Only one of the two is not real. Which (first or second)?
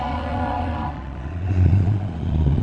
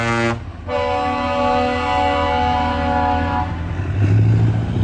first